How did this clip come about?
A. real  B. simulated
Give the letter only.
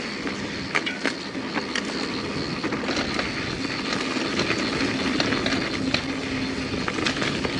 A